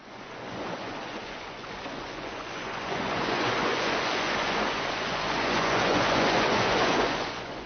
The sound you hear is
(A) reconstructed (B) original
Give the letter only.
A